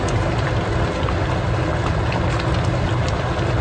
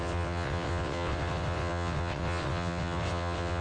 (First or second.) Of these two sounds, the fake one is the second